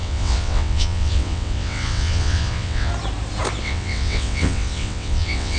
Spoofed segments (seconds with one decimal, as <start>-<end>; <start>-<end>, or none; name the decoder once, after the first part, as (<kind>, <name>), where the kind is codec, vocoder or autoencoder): 0.0-2.9 (vocoder, WaveNeXt); 3.6-5.6